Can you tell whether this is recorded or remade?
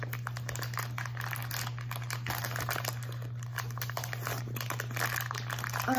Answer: recorded